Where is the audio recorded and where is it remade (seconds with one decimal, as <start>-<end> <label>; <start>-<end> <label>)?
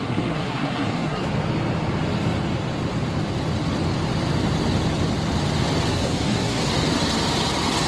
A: 0.0-1.2 remade; 1.2-5.9 recorded; 5.9-6.7 remade; 6.7-7.9 recorded